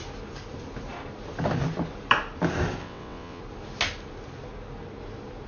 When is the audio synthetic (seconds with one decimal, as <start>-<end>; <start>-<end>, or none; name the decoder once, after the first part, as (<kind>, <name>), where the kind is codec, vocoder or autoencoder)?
2.8-3.4 (vocoder, WaveNeXt)